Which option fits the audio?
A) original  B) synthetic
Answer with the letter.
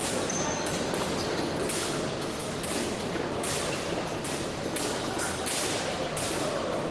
A